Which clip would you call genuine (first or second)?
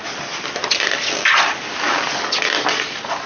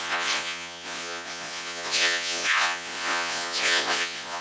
first